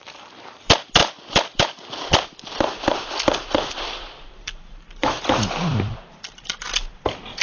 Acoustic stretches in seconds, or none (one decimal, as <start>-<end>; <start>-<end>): 0.0-1.0; 5.3-5.7; 6.9-7.4